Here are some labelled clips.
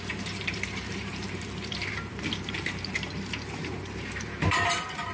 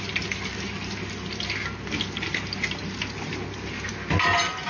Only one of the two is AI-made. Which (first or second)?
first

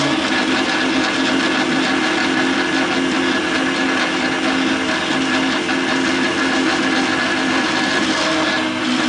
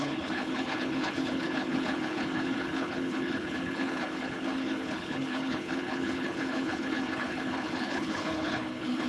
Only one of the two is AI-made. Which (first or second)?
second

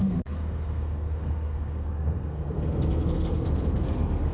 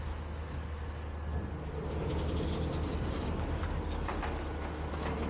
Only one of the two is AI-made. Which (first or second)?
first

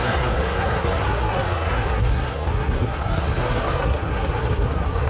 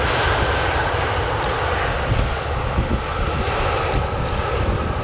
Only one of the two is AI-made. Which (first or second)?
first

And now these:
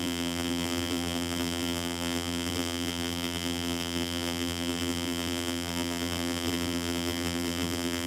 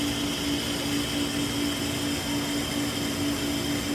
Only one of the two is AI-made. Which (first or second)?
first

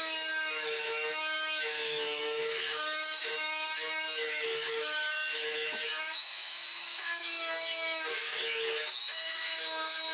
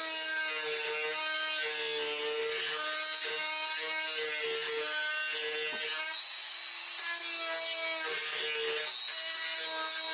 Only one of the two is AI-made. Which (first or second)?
first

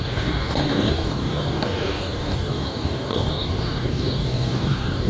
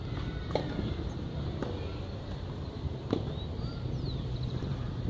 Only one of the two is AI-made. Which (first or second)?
first